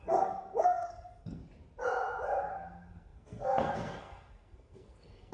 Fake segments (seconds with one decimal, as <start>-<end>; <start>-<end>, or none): 0.0-1.4; 2.4-5.3